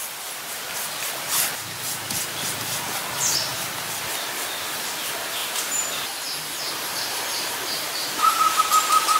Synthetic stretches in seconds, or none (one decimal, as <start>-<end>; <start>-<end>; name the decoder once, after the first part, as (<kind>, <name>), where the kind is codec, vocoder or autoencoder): 5.4-8.6 (vocoder, BigVGAN v2)